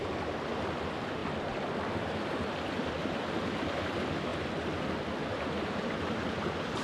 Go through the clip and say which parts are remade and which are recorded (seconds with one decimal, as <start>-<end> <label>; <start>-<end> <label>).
0.0-1.2 remade; 1.2-3.2 recorded; 3.2-4.3 remade; 4.3-5.3 recorded; 5.3-6.8 remade